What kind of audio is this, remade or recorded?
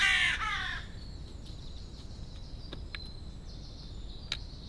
recorded